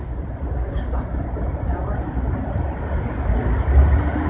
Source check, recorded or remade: recorded